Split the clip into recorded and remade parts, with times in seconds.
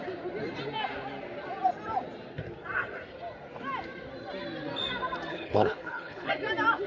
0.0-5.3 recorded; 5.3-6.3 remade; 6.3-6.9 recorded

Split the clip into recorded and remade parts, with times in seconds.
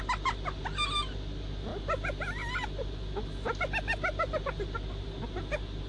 0.0-5.9 recorded